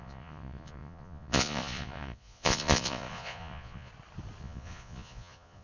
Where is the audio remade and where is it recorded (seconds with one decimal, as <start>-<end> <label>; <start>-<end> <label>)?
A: 0.0-3.9 remade; 3.9-4.4 recorded; 4.4-5.6 remade